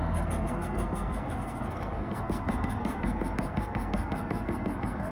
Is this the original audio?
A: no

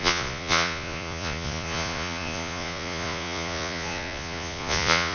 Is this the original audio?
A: no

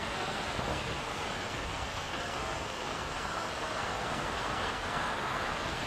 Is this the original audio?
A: no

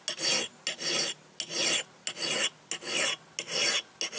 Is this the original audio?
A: yes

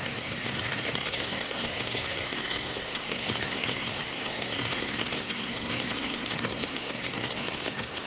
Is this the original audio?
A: no